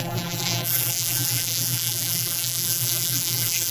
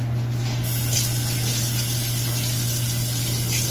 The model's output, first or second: first